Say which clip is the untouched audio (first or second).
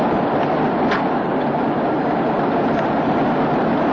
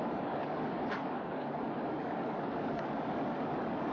first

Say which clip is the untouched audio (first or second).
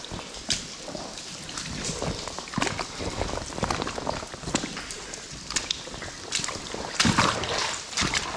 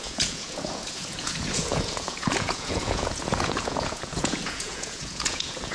first